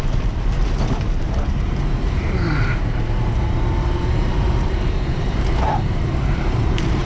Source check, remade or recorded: remade